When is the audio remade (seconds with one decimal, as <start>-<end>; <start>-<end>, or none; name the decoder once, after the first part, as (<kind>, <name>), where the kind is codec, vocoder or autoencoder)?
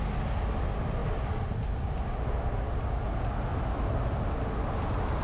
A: 1.0-2.4 (vocoder, BigVGAN v2)